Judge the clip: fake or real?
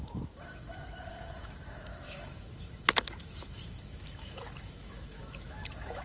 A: fake